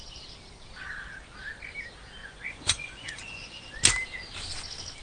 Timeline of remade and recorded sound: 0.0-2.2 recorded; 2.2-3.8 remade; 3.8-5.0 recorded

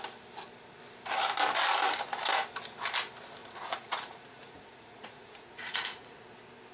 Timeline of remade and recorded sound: 0.0-3.4 recorded; 3.4-6.2 remade; 6.2-6.7 recorded

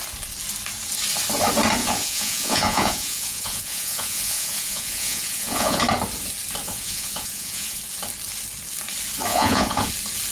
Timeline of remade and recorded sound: 0.0-1.8 recorded; 1.8-5.8 remade; 5.8-6.6 recorded; 6.6-7.8 remade; 7.8-9.3 recorded; 9.3-9.9 remade; 9.9-10.3 recorded

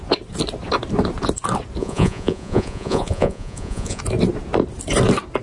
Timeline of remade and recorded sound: 0.0-1.8 recorded; 1.8-4.0 remade; 4.0-5.4 recorded

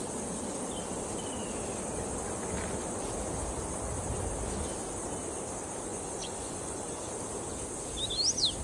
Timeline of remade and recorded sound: 0.0-5.9 recorded; 5.9-7.1 remade; 7.1-8.6 recorded

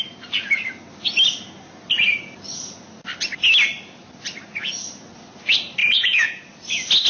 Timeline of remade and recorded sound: 0.0-5.8 recorded; 5.8-6.4 remade; 6.4-7.1 recorded

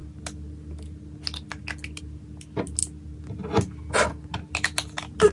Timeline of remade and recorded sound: 0.0-5.3 recorded